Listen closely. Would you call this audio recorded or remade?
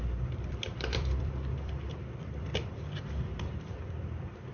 remade